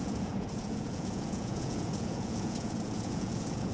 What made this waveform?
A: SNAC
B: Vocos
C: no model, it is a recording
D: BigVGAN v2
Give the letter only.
B